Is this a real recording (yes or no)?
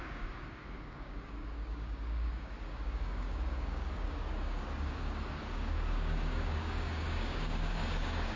no